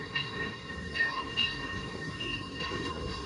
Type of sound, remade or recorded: remade